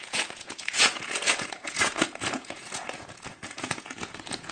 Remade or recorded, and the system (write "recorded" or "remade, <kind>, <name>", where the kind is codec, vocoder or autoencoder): remade, vocoder, Vocos